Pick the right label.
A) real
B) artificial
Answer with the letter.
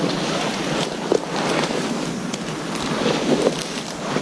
B